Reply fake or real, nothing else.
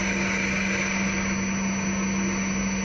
real